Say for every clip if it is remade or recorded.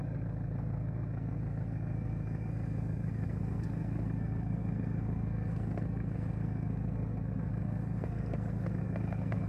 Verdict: remade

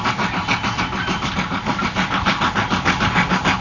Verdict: recorded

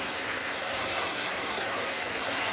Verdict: remade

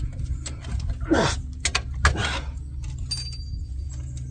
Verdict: recorded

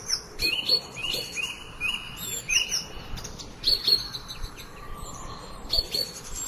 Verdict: remade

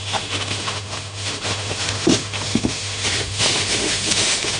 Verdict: remade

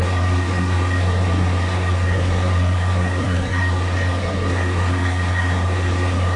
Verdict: remade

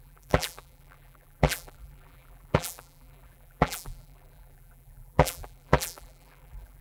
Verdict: remade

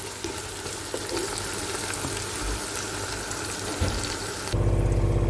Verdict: recorded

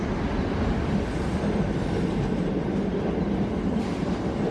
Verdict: recorded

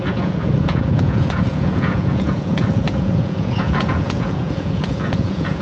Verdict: remade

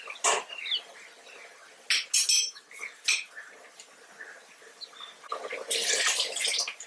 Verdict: recorded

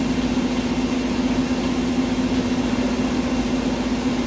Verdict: recorded